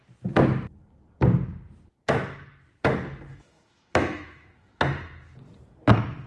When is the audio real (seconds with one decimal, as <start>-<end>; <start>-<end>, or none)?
0.0-3.3; 4.8-6.3